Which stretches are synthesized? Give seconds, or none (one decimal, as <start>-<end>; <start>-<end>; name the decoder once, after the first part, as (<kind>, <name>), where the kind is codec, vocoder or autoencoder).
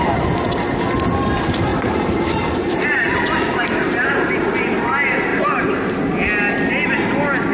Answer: 1.7-4.2 (vocoder, BigVGAN v2)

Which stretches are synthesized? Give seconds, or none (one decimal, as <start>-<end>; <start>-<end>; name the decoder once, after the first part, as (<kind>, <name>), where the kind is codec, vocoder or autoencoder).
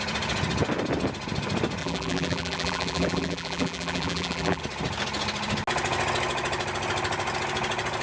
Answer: 1.8-4.6 (vocoder, BigVGAN v2)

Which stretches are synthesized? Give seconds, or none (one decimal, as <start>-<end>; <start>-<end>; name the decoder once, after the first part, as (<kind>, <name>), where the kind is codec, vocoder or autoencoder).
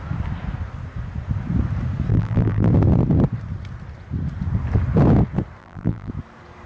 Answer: 2.1-2.7 (vocoder, BigVGAN v2); 5.6-6.1